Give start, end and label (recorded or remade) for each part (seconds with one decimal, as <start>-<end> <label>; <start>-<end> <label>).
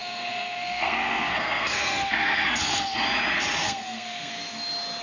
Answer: 0.0-3.0 remade; 3.0-3.6 recorded; 3.6-4.3 remade; 4.3-5.0 recorded